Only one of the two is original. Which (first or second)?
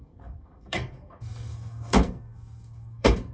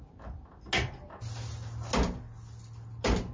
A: second